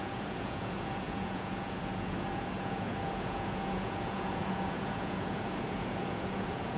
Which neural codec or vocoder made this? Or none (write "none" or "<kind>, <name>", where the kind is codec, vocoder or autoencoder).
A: vocoder, Vocos